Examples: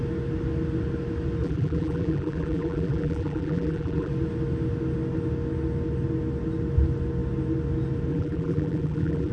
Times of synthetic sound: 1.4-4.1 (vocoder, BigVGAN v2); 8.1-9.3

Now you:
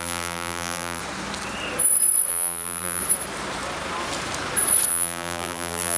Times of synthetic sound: 0.0-1.0 (vocoder, BigVGAN v2); 2.3-3.0; 4.9-6.0

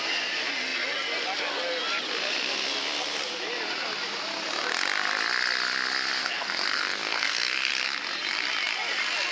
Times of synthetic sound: 6.2-7.7 (codec, SNAC)

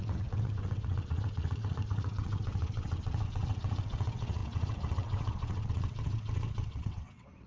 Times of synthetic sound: 0.0-7.5 (vocoder, WaveNeXt)

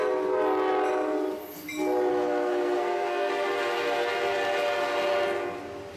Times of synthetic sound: 2.1-3.3 (codec, SNAC)